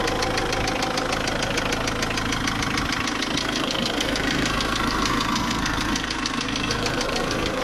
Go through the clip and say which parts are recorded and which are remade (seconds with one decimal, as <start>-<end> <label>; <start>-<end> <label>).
0.0-3.4 recorded; 3.4-7.6 remade